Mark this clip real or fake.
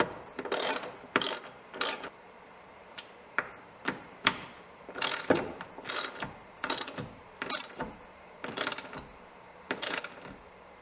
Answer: fake